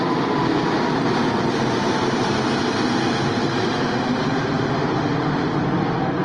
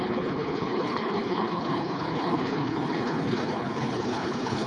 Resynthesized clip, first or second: second